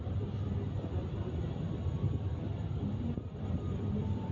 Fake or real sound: real